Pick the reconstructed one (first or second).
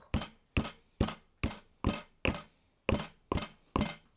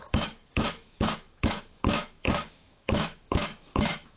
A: second